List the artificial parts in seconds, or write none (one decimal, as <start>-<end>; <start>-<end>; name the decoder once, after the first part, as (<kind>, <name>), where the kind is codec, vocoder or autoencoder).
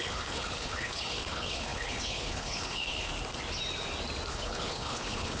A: 0.0-3.1 (codec, HILCodec); 4.3-5.4